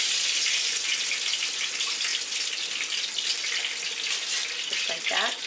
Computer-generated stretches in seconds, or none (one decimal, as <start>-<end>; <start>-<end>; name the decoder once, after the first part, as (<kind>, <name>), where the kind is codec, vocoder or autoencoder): none